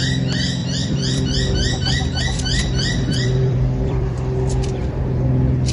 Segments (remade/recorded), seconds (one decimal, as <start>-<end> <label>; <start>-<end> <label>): 0.0-0.6 recorded; 0.6-2.2 remade; 2.2-2.6 recorded; 2.6-5.0 remade; 5.0-5.7 recorded